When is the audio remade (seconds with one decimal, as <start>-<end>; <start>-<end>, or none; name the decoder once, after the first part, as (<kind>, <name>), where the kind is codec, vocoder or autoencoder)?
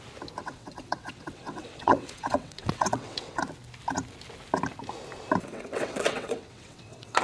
0.4-3.4 (vocoder, WaveNeXt); 5.5-7.2